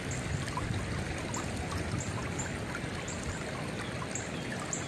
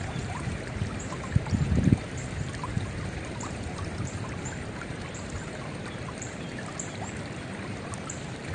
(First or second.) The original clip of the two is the first